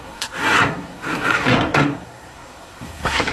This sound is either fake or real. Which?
fake